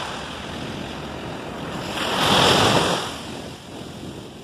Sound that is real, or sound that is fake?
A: real